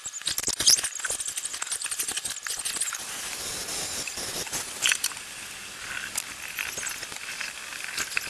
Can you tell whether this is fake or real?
real